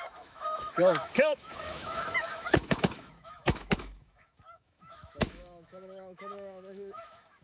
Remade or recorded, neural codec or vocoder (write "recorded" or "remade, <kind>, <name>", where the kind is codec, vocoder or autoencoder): remade, autoencoder, DAC-VAE